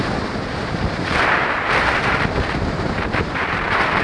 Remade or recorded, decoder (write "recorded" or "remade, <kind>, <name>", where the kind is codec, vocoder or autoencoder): remade, vocoder, BigVGAN v2